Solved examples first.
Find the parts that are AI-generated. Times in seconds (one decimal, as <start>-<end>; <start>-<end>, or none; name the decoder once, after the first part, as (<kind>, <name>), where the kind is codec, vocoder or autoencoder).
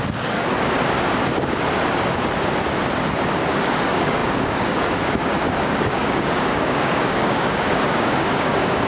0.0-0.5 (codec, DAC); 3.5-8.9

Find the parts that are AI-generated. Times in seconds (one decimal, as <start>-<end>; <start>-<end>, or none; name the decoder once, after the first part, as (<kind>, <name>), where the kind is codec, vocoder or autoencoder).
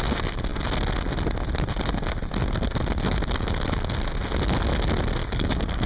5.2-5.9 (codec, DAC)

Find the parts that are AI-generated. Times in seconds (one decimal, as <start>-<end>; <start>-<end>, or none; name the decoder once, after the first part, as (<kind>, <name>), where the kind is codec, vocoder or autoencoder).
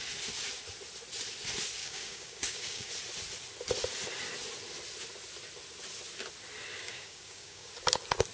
1.8-2.9 (codec, DAC); 6.8-7.7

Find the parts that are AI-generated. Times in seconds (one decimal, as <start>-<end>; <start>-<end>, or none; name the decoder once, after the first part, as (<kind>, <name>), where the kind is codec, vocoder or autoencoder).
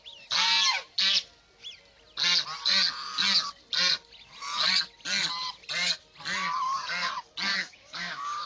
7.5-8.5 (codec, DAC)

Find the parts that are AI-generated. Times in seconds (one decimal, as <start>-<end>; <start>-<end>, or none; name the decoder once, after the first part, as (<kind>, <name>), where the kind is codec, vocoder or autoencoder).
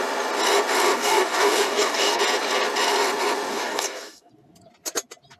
0.9-2.2 (codec, DAC); 3.5-4.3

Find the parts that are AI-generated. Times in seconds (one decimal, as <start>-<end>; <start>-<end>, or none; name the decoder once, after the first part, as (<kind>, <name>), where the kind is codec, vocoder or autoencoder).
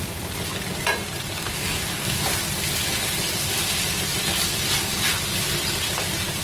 1.4-2.2 (codec, DAC)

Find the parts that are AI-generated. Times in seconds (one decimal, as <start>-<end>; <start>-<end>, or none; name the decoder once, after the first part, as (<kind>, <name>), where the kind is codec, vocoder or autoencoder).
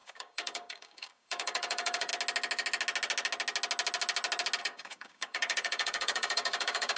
0.0-2.1 (codec, DAC); 4.6-7.0